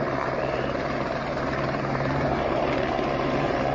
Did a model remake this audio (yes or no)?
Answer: yes